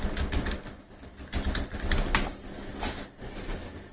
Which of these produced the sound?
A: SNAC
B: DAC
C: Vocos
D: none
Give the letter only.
D